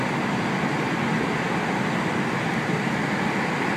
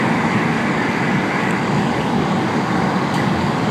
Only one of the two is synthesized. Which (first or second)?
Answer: second